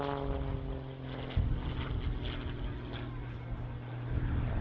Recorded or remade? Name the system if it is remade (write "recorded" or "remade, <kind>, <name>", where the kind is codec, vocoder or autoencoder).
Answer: recorded